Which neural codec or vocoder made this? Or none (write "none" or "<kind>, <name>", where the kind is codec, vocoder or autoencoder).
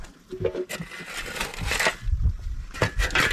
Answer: none